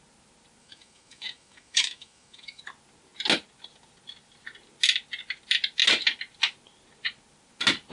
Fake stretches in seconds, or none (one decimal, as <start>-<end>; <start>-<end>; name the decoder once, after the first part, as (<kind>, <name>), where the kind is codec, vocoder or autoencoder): 0.6-2.6 (autoencoder, DAC-VAE)